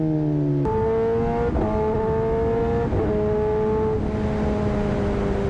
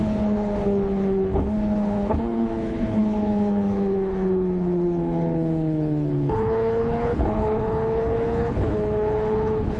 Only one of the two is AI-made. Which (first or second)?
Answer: second